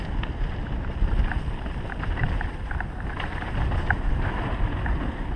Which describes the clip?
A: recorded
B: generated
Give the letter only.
A